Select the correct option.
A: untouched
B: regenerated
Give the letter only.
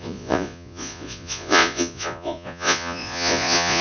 B